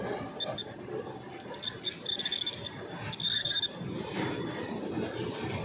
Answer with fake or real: real